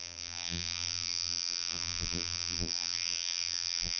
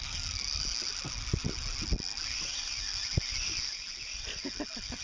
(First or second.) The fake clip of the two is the first